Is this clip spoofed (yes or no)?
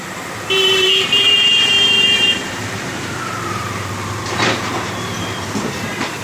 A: yes